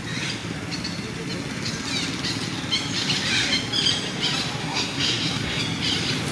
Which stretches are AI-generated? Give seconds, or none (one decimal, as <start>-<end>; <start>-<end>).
4.6-5.6